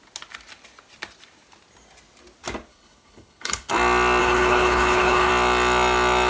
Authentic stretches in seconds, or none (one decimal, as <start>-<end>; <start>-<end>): 0.0-2.7; 3.7-4.2; 5.3-6.3